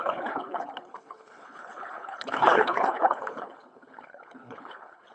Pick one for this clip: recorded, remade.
remade